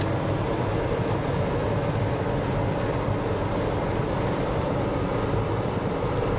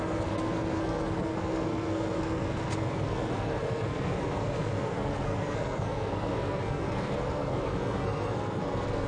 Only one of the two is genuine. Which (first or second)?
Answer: first